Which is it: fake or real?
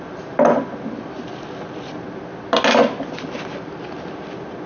real